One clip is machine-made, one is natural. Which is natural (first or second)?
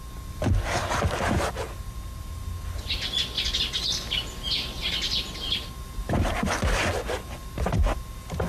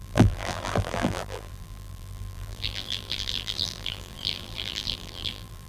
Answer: first